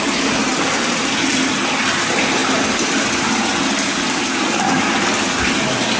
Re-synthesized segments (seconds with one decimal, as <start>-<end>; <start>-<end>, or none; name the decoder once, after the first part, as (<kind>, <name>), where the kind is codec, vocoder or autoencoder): none